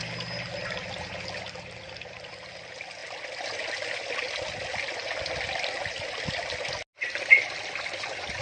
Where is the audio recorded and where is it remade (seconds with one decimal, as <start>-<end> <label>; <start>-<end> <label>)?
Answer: 0.0-8.4 recorded

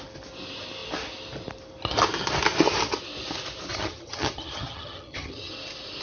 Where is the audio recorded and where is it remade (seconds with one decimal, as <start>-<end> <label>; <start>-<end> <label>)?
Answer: 0.0-3.7 recorded; 3.7-5.5 remade; 5.5-6.0 recorded

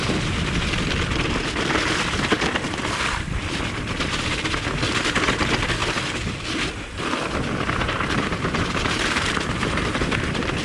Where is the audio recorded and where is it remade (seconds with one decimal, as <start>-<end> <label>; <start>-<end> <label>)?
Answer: 0.0-5.8 remade; 5.8-6.8 recorded; 6.8-10.6 remade

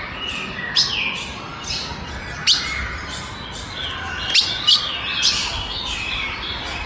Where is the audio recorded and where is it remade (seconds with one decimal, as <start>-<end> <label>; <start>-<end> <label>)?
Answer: 0.0-6.9 recorded

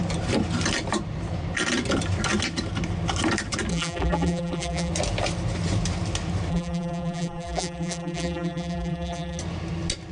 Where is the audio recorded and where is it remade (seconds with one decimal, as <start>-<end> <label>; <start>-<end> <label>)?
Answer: 0.0-3.7 recorded; 3.7-4.9 remade; 4.9-6.5 recorded; 6.5-9.4 remade; 9.4-10.1 recorded

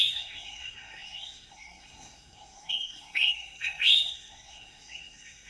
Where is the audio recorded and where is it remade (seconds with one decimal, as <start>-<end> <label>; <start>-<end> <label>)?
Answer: 0.0-5.5 remade